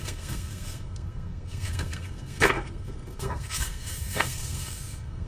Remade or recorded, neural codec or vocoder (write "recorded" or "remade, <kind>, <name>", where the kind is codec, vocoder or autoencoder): remade, codec, SNAC